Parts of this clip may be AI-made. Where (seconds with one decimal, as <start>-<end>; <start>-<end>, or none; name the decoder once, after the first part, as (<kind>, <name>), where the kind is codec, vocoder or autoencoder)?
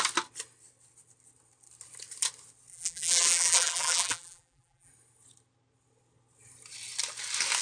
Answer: 2.7-4.9 (vocoder, BigVGAN v2)